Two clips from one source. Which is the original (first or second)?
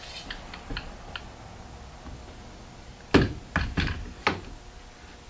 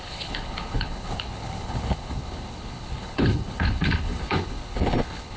first